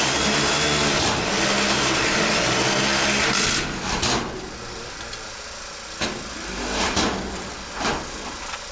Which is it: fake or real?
real